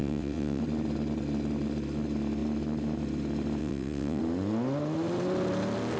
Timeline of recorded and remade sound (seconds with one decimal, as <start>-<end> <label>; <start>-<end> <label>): 0.0-0.6 remade; 0.6-3.6 recorded; 3.6-4.2 remade; 4.2-6.0 recorded